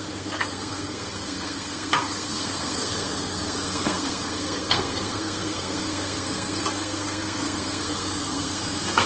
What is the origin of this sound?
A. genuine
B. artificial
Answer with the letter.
B